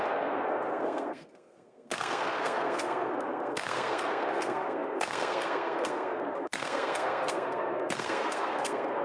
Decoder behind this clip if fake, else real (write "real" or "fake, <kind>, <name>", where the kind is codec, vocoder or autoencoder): fake, codec, SNAC